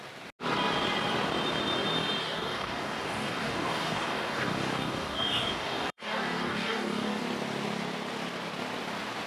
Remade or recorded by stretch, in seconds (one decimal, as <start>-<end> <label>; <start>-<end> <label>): 0.0-2.2 recorded; 2.2-7.2 remade; 7.2-9.3 recorded

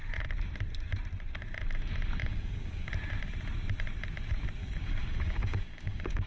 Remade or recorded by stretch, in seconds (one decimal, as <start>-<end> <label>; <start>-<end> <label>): 0.0-2.2 recorded; 2.2-2.9 remade; 2.9-4.6 recorded; 4.6-6.3 remade

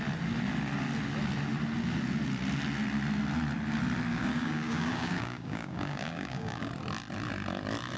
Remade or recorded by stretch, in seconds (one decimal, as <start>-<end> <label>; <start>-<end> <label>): 0.0-4.1 recorded; 4.1-6.7 remade; 6.7-8.0 recorded